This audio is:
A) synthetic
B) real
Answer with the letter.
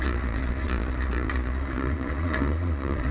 A